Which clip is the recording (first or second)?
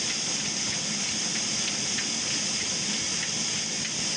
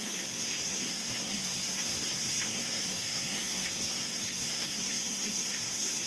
first